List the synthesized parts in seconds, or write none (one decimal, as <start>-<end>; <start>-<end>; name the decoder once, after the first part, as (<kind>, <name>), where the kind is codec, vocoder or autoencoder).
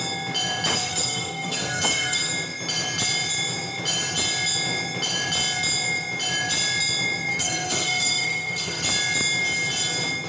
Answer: 0.7-2.3 (codec, SNAC); 7.3-8.8